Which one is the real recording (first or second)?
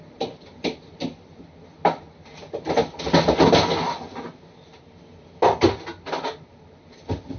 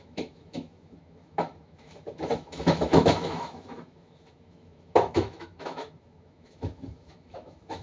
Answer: first